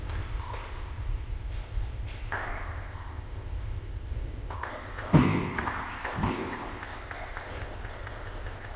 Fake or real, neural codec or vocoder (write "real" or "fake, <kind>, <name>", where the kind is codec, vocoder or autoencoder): fake, codec, ZipCodec